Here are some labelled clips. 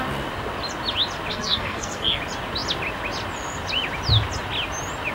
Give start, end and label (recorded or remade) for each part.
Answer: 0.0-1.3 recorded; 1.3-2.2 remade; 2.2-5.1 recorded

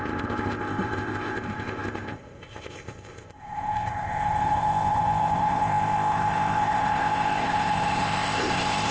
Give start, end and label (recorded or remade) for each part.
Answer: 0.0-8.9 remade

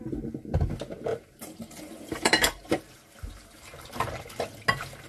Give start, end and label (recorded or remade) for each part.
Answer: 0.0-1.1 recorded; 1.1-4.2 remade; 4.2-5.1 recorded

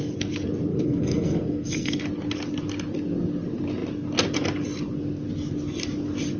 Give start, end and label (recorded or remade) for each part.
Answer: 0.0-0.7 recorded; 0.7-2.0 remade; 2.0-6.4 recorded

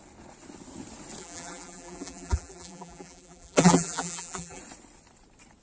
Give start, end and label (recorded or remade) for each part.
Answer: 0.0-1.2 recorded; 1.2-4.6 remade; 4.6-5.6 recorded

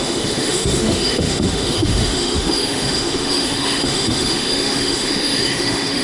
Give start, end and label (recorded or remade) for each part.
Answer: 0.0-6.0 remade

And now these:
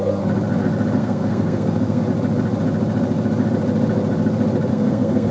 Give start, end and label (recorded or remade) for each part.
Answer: 0.0-1.0 recorded; 1.0-2.0 remade; 2.0-4.7 recorded; 4.7-5.3 remade

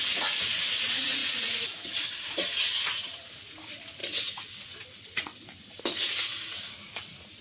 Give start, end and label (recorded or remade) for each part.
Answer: 0.0-4.0 remade; 4.0-4.8 recorded; 4.8-5.3 remade; 5.3-6.2 recorded; 6.2-7.4 remade